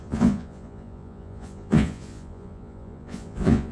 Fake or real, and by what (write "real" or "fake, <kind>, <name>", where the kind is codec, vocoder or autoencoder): fake, vocoder, Vocos